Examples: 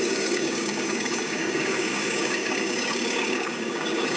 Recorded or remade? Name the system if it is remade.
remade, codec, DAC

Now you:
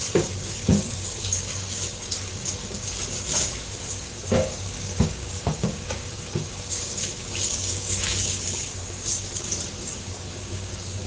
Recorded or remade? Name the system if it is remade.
remade, codec, DAC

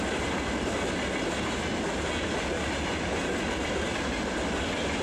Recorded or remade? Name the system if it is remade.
recorded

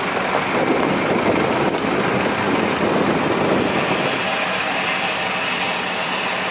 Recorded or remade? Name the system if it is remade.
recorded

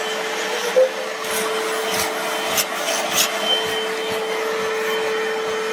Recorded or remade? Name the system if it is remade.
recorded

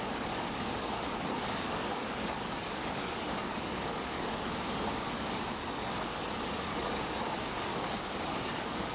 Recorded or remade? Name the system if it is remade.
remade, codec, DAC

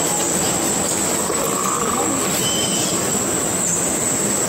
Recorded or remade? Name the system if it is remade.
recorded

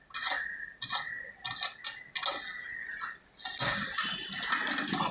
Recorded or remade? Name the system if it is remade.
recorded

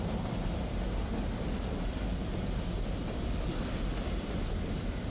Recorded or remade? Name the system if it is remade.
recorded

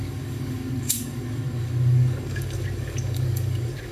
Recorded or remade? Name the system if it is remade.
remade, codec, DAC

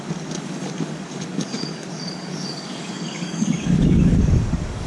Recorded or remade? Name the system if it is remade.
remade, codec, DAC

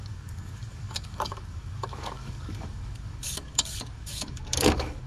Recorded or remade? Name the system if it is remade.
remade, codec, DAC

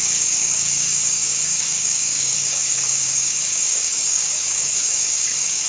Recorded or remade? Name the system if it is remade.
remade, codec, DAC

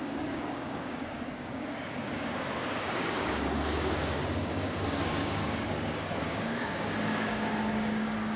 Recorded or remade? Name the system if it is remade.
remade, codec, DAC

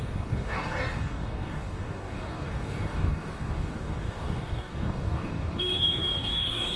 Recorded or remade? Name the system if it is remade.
remade, codec, DAC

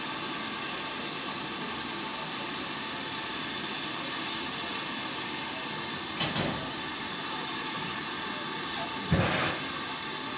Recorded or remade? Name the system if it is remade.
recorded